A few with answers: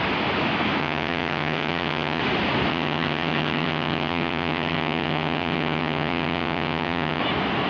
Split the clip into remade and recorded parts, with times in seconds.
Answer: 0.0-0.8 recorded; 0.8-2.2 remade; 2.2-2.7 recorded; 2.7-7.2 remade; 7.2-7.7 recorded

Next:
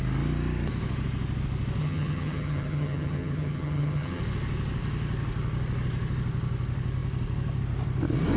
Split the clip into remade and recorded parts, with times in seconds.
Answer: 0.0-1.8 recorded; 1.8-4.2 remade; 4.2-8.4 recorded

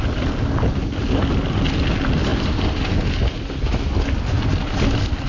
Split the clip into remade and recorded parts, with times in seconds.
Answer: 0.0-5.3 recorded

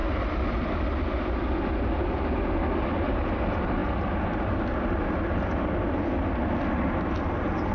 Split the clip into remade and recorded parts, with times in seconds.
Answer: 0.0-7.7 recorded

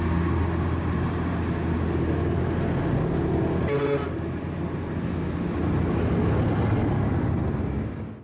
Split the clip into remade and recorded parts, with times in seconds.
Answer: 0.0-8.2 recorded

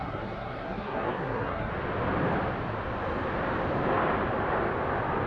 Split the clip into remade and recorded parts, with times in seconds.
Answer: 0.0-1.7 remade; 1.7-5.3 recorded

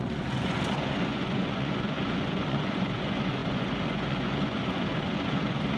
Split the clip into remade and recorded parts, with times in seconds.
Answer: 0.0-5.8 remade

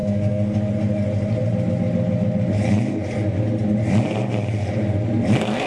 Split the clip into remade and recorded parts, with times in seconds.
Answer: 0.0-0.7 remade; 0.7-5.7 recorded